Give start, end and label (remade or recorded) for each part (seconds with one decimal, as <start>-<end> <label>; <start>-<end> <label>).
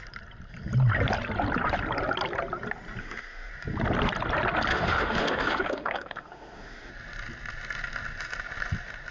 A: 0.0-3.0 recorded; 3.0-3.5 remade; 3.5-4.7 recorded; 4.7-6.9 remade; 6.9-9.1 recorded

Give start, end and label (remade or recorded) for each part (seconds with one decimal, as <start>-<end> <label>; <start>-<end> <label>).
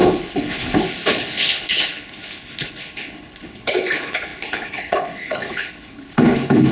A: 0.0-6.7 remade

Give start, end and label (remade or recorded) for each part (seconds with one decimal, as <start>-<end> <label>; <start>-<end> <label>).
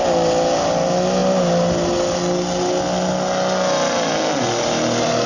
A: 0.0-5.3 recorded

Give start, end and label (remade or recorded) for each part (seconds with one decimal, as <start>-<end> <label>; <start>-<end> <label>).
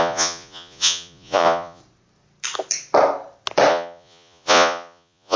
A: 0.0-1.8 remade; 1.8-3.7 recorded; 3.7-5.4 remade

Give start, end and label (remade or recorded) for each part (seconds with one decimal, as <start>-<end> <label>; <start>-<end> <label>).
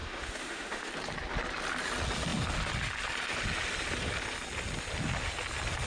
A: 0.0-0.9 remade; 0.9-5.9 recorded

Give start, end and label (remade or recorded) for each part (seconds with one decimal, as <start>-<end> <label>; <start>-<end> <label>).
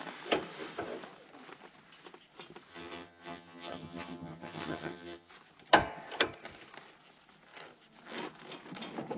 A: 0.0-2.7 recorded; 2.7-5.3 remade; 5.3-9.2 recorded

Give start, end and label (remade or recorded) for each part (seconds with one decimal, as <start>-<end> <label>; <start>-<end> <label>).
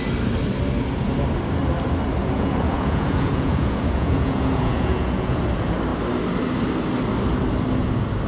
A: 0.0-2.2 recorded; 2.2-5.4 remade; 5.4-8.3 recorded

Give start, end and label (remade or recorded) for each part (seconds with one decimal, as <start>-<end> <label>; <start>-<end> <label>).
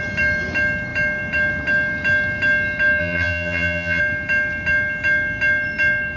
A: 0.0-3.0 recorded; 3.0-4.0 remade; 4.0-6.2 recorded